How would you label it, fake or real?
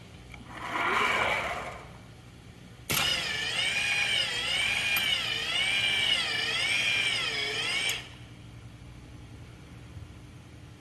real